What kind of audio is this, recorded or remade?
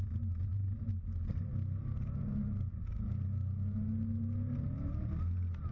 recorded